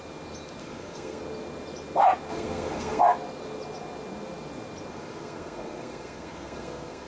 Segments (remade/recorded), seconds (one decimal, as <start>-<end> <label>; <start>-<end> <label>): 0.0-0.6 recorded; 0.6-1.2 remade; 1.2-2.3 recorded; 2.3-3.0 remade; 3.0-4.9 recorded; 4.9-7.1 remade